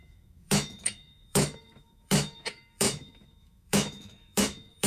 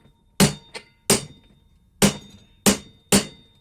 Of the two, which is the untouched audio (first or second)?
second